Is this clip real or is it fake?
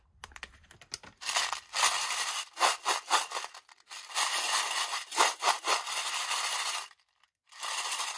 real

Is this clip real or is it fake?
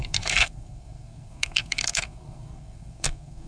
fake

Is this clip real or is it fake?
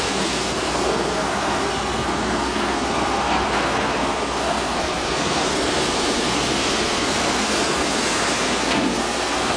fake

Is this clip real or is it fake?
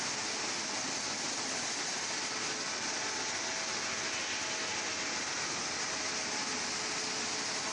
real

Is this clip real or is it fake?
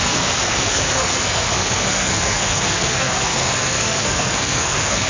fake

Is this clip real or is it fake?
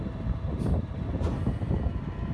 real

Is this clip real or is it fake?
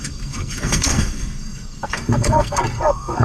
fake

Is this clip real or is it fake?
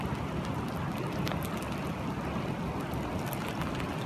real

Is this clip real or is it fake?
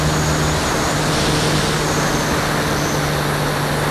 real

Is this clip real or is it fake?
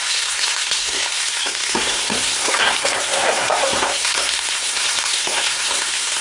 fake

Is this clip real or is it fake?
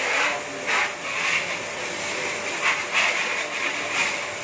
real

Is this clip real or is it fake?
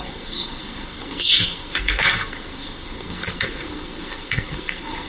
fake